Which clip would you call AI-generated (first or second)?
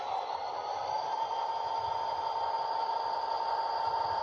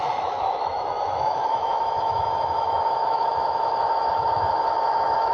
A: second